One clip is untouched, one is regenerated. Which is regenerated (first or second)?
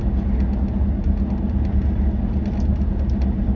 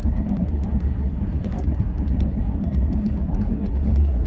second